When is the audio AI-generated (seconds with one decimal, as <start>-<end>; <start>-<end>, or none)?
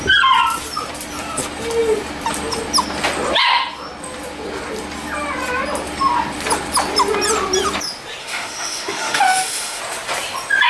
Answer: 8.2-9.8